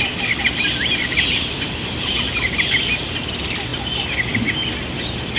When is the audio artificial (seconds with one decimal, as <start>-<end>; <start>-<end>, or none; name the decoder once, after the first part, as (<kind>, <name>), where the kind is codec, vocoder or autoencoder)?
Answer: 1.0-2.1 (vocoder, BigVGAN v2)